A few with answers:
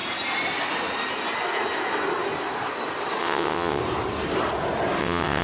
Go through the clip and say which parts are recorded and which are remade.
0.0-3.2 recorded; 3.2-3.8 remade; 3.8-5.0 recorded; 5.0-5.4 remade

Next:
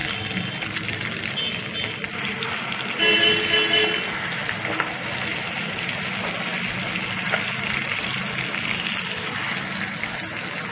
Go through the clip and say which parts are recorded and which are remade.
0.0-10.7 recorded

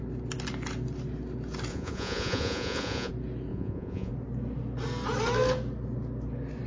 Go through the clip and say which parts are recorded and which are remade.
0.0-1.7 recorded; 1.7-3.1 remade; 3.1-3.5 recorded; 3.5-4.1 remade; 4.1-6.7 recorded

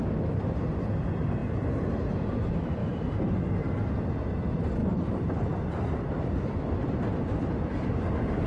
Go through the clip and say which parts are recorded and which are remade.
0.0-2.8 recorded; 2.8-3.3 remade; 3.3-4.8 recorded; 4.8-7.0 remade; 7.0-8.5 recorded

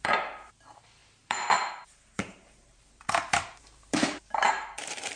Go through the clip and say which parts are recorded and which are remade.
0.0-5.2 remade

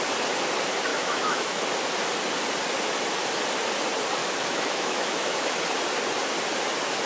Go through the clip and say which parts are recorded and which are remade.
0.0-0.9 recorded; 0.9-1.6 remade; 1.6-4.2 recorded; 4.2-5.6 remade; 5.6-7.1 recorded

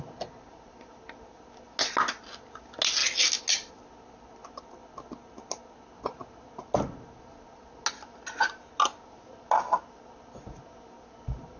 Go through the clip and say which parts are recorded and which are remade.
0.0-11.6 recorded

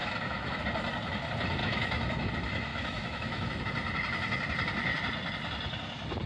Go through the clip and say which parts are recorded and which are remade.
0.0-0.6 remade; 0.6-1.6 recorded; 1.6-2.3 remade; 2.3-2.7 recorded; 2.7-3.6 remade; 3.6-6.3 recorded